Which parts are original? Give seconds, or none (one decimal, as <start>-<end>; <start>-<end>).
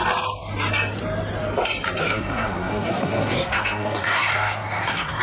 0.0-2.0